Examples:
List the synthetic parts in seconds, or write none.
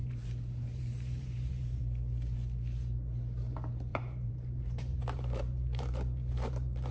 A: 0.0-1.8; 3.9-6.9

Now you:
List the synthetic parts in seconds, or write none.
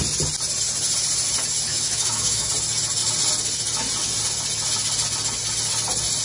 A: 1.7-2.5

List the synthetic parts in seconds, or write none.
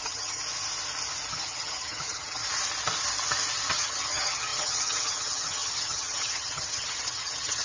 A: 0.0-0.4; 1.3-2.4; 3.7-7.6